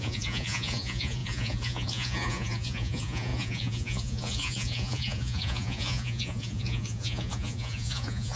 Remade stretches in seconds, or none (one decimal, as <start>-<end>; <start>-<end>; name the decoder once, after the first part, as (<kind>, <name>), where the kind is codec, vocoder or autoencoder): 0.0-8.4 (vocoder, Vocos)